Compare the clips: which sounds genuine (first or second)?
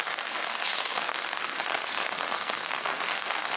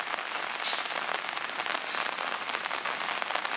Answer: second